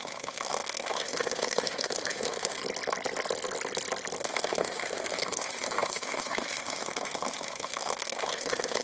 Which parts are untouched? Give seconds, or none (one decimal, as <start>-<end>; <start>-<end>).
2.6-4.2